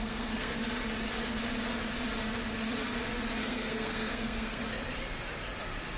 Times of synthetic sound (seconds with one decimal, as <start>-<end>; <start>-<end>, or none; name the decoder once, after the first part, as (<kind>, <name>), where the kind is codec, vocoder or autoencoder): 0.0-0.6 (codec, SNAC); 3.4-4.6